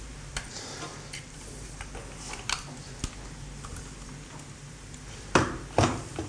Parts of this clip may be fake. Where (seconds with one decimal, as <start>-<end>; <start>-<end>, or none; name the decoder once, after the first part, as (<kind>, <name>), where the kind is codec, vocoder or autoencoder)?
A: 0.0-0.9 (vocoder, BigVGAN v2); 4.7-6.3